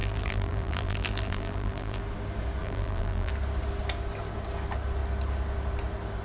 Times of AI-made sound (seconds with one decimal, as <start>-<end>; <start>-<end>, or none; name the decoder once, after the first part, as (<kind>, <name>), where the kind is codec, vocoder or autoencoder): 0.0-2.0 (vocoder, BigVGAN v2); 2.6-3.3